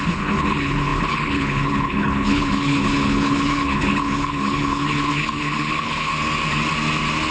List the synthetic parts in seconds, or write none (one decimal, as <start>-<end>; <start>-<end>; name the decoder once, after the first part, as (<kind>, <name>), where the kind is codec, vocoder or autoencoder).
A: 0.0-6.1 (codec, HILCodec)